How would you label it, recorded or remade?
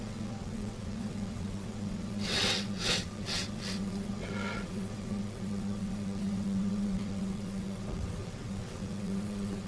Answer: remade